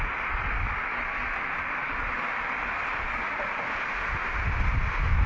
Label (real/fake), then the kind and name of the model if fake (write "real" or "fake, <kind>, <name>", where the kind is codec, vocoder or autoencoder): real